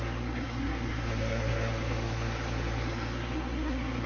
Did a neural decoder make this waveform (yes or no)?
yes